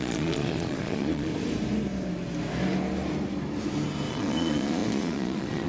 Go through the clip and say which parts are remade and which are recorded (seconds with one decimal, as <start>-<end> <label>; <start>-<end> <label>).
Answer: 0.0-1.3 remade; 1.3-4.1 recorded; 4.1-5.7 remade